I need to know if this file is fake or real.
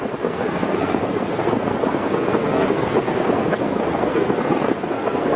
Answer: fake